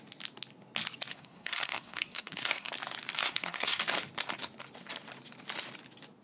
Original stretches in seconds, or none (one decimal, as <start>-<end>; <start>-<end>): 0.0-1.1; 2.7-3.2; 3.8-6.2